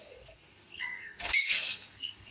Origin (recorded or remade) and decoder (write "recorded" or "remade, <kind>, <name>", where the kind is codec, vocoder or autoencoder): remade, codec, SNAC